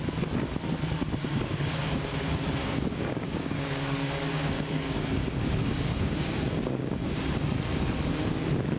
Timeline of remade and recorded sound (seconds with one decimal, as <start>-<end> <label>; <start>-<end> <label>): 0.0-1.2 recorded; 1.2-2.0 remade; 2.0-2.6 recorded; 2.6-7.1 remade; 7.1-8.8 recorded

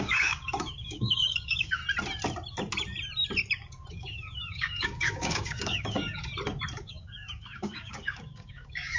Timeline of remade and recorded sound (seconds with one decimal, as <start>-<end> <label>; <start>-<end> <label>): 0.0-1.8 remade; 1.8-3.9 recorded; 3.9-6.2 remade; 6.2-6.8 recorded; 6.8-9.0 remade